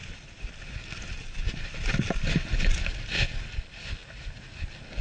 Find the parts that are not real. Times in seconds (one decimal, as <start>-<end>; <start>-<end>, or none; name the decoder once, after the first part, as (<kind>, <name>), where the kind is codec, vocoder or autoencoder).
none